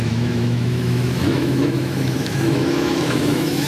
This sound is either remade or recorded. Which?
remade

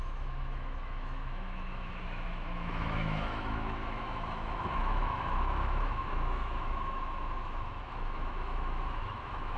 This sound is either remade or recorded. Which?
remade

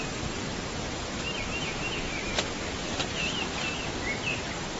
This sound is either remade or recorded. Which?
recorded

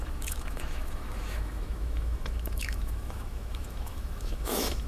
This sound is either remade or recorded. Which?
remade